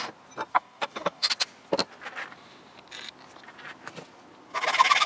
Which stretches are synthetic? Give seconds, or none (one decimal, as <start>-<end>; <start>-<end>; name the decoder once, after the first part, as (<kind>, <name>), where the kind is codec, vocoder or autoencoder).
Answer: 0.5-1.3 (codec, DAC)